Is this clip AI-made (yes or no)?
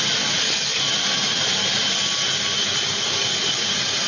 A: no